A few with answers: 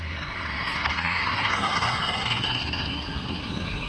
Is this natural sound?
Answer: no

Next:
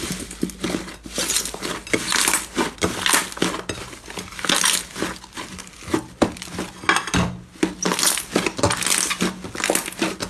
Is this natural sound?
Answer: yes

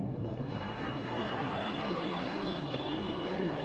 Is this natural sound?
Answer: no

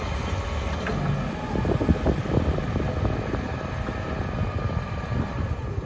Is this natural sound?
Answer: yes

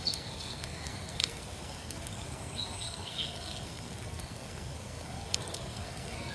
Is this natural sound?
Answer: no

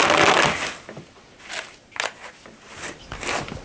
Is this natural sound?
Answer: yes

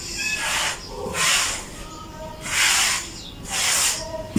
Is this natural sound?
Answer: yes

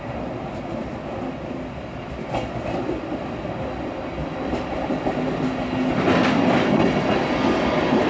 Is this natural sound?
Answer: yes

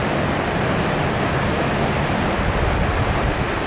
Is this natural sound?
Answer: yes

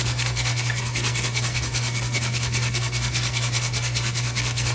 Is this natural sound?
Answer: no